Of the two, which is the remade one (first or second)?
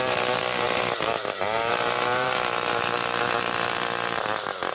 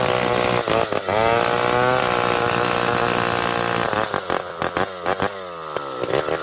first